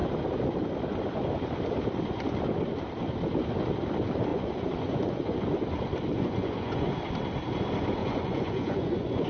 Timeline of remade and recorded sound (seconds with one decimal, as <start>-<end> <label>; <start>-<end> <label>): 0.0-4.3 recorded; 4.3-5.4 remade; 5.4-6.1 recorded; 6.1-6.9 remade; 6.9-8.0 recorded; 8.0-9.3 remade